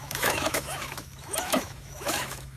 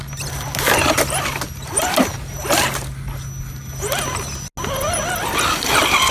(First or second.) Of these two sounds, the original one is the second